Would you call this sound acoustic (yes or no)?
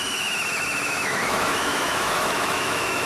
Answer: no